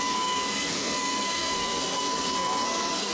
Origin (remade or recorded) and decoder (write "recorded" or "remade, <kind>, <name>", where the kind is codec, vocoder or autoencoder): remade, codec, SNAC